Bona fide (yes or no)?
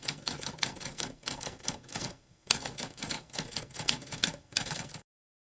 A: no